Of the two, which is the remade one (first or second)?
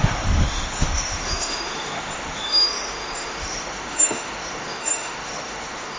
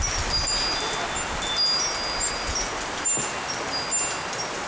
first